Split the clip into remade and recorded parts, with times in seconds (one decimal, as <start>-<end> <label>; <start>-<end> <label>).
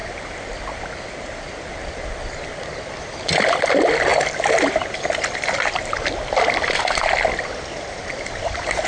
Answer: 0.0-8.9 recorded